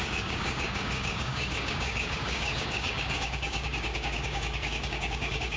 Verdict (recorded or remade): remade